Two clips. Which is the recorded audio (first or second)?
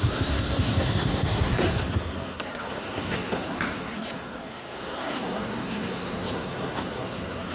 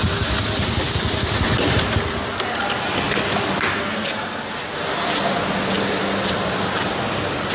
second